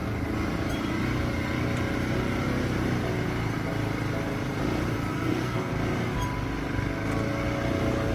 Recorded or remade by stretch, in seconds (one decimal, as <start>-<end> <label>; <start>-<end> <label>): 0.0-5.1 recorded; 5.1-5.7 remade; 5.7-8.1 recorded